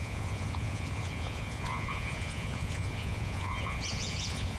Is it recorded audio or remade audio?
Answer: remade